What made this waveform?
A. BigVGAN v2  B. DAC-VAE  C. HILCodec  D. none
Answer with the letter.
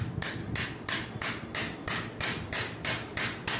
D